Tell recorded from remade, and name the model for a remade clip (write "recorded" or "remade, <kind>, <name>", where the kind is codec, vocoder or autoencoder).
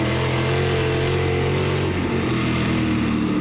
recorded